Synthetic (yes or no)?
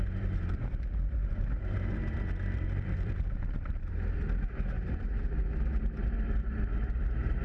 yes